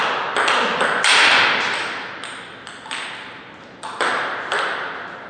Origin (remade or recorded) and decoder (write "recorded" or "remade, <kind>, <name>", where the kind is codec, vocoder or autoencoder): recorded